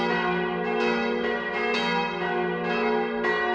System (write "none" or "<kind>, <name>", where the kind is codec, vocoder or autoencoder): none